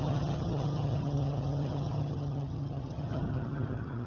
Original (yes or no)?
no